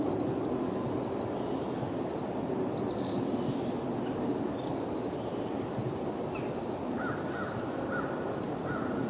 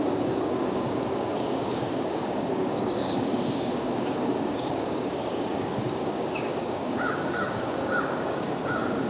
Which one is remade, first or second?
second